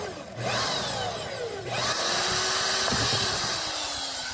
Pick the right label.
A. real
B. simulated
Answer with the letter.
A